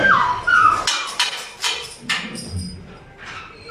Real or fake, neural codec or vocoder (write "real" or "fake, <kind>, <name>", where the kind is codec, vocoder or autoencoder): real